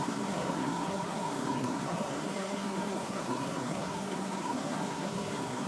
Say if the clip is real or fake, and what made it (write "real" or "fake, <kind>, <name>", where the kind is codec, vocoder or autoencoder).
fake, codec, SNAC